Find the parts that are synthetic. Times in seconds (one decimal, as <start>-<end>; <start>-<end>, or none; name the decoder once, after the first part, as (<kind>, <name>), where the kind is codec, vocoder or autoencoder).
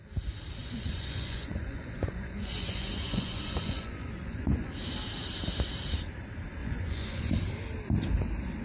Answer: 0.6-4.7 (vocoder, Vocos); 6.6-7.3